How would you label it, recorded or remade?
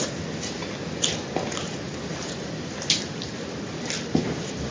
recorded